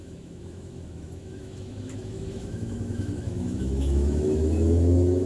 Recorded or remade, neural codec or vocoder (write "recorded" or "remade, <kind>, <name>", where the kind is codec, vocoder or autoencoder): remade, autoencoder, DAC-VAE